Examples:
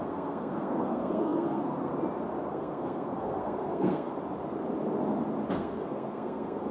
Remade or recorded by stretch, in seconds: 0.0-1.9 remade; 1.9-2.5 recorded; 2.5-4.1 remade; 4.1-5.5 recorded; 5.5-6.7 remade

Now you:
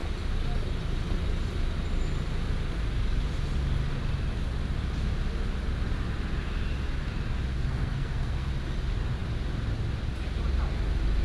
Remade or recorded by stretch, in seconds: 0.0-7.5 recorded; 7.5-8.5 remade; 8.5-11.2 recorded

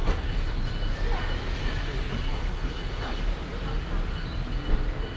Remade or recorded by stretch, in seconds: 0.0-0.6 remade; 0.6-2.3 recorded; 2.3-3.2 remade; 3.2-5.2 recorded

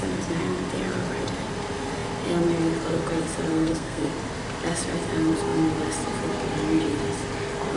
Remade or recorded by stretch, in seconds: 0.0-3.5 recorded; 3.5-4.1 remade; 4.1-7.8 recorded

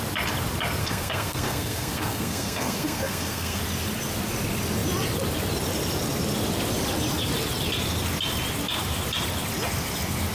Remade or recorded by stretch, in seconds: 0.0-0.8 recorded; 0.8-3.6 remade; 3.6-10.3 recorded